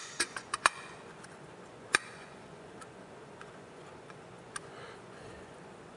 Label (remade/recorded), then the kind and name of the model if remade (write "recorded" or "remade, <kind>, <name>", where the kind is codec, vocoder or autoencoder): remade, vocoder, Vocos